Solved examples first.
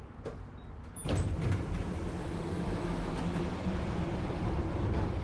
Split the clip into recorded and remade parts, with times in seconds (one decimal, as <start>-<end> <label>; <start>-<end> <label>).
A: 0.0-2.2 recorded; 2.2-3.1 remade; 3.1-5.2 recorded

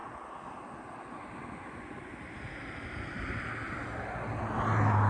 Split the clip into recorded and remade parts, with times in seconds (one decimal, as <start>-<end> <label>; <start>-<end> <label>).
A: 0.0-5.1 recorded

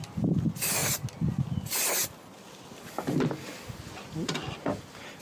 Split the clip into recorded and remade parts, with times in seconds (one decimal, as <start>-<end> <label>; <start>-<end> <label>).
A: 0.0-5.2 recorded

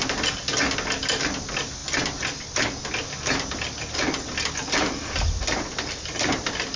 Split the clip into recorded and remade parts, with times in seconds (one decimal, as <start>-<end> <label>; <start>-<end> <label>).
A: 0.0-6.8 recorded

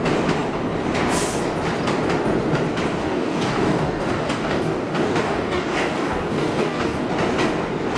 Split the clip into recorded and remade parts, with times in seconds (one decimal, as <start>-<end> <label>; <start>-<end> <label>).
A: 0.0-3.0 recorded; 3.0-7.1 remade; 7.1-8.0 recorded

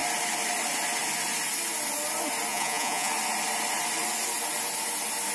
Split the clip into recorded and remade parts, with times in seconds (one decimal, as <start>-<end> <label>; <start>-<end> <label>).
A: 0.0-2.5 recorded; 2.5-3.1 remade; 3.1-5.3 recorded

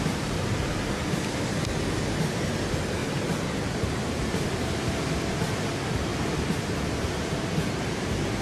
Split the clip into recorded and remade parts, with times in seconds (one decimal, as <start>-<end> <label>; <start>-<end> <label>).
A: 0.0-3.0 recorded; 3.0-4.0 remade; 4.0-6.1 recorded; 6.1-8.4 remade

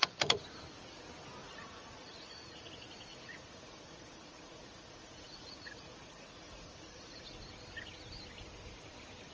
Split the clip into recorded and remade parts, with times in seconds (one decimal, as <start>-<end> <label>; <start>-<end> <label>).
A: 0.0-1.4 recorded; 1.4-2.7 remade; 2.7-3.1 recorded; 3.1-7.3 remade; 7.3-9.3 recorded